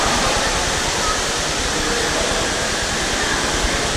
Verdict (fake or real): real